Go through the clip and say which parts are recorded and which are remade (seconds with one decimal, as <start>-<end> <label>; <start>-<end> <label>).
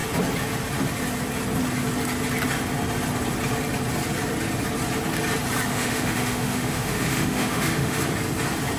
0.0-5.7 recorded; 5.7-8.0 remade; 8.0-8.8 recorded